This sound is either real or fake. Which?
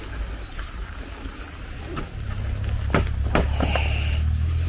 real